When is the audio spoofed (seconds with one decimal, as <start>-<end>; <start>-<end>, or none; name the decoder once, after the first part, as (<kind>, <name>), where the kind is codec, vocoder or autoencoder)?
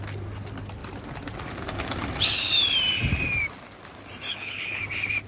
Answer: 4.3-4.8 (codec, HILCodec)